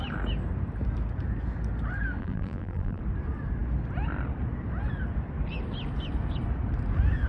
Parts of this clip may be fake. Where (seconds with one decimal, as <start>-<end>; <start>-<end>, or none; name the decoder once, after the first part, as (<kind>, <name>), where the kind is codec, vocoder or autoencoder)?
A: 2.2-3.0 (vocoder, BigVGAN v2)